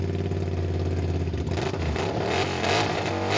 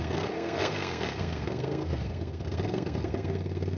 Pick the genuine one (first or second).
first